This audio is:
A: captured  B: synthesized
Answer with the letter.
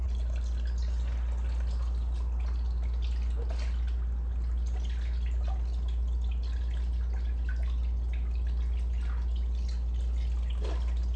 A